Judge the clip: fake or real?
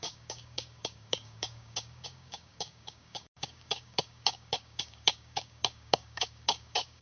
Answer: fake